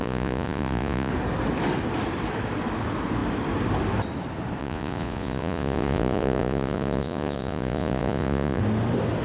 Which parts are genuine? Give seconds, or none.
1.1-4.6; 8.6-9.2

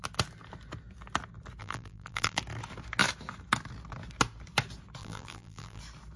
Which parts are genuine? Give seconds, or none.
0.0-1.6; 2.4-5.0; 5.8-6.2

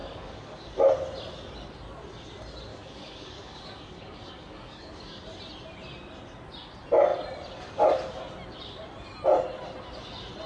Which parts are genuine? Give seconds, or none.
0.7-2.7; 5.2-10.5

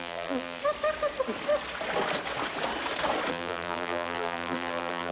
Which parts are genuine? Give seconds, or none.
0.6-3.3